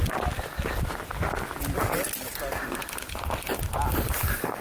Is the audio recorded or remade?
recorded